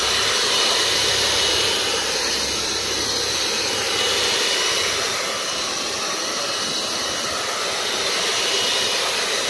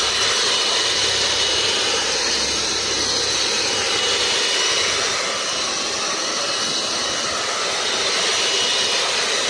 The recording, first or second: second